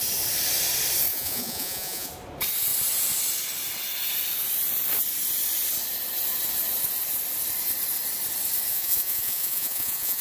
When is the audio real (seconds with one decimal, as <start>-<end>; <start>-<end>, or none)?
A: 0.0-1.1; 2.1-8.7